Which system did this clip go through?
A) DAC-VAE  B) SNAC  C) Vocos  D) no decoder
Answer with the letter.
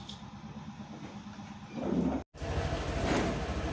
D